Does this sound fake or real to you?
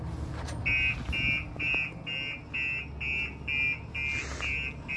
real